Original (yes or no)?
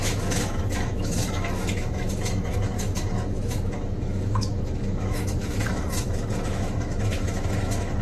no